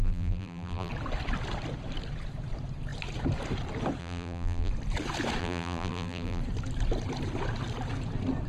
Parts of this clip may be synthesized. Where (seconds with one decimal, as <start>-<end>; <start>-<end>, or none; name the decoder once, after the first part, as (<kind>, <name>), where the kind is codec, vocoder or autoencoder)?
0.0-0.9 (vocoder, BigVGAN v2); 4.0-4.7; 5.4-6.4